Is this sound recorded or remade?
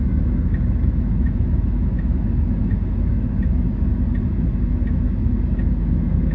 remade